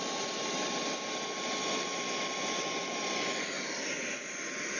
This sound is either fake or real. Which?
real